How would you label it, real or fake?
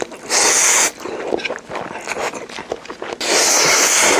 real